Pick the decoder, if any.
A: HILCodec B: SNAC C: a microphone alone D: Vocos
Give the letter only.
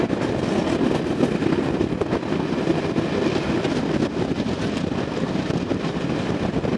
C